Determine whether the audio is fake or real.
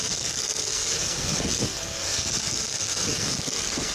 fake